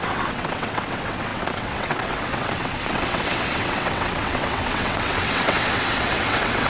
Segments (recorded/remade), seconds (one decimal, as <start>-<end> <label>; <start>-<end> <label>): 0.0-6.7 remade